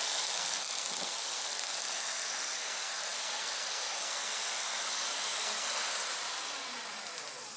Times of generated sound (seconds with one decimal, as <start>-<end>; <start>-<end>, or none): 0.0-6.1